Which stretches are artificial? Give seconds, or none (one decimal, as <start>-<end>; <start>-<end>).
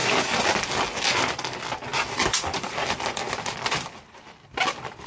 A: 0.0-0.7; 1.9-5.1